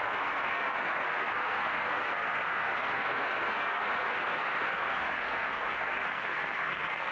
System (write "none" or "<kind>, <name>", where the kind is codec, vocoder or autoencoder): codec, SNAC